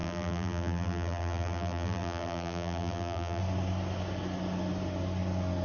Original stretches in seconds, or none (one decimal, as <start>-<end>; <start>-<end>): 3.4-5.6